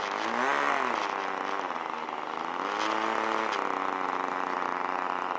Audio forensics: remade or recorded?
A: recorded